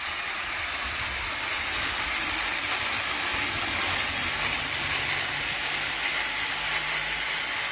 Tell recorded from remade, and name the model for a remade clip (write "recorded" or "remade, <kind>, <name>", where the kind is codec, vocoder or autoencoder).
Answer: recorded